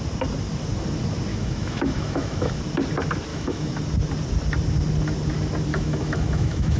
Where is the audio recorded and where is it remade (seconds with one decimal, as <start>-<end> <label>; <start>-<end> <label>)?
0.0-1.3 recorded; 1.3-2.6 remade; 2.6-3.3 recorded; 3.3-3.8 remade; 3.8-5.7 recorded; 5.7-6.8 remade

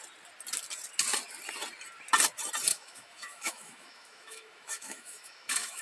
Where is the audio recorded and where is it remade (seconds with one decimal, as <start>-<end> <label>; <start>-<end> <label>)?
0.0-2.7 recorded; 2.7-5.8 remade

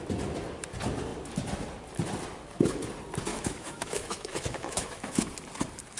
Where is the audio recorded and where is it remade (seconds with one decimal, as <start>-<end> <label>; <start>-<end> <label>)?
0.0-3.3 recorded; 3.3-5.3 remade; 5.3-6.0 recorded